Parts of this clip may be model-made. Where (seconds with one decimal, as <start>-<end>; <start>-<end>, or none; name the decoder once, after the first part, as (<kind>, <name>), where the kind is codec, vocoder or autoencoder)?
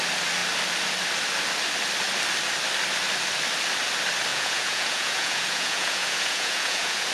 4.3-7.1 (vocoder, Vocos)